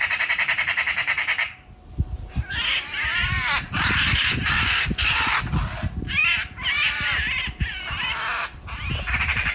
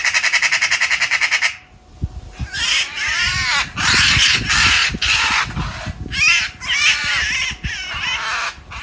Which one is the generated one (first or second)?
first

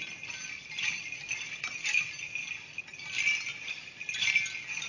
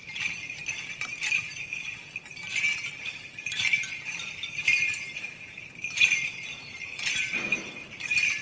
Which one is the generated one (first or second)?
second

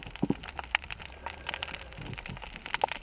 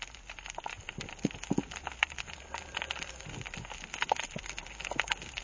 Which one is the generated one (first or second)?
first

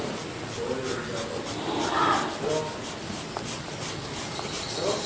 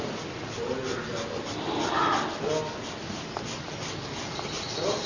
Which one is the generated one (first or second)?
first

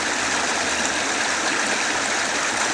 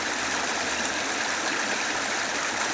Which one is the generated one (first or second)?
second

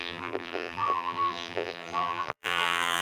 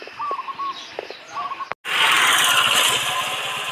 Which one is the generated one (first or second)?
first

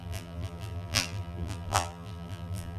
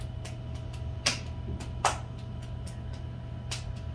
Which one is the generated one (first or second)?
first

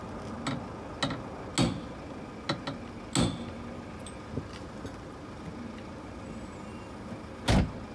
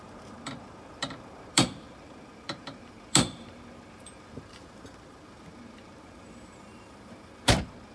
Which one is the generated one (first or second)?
second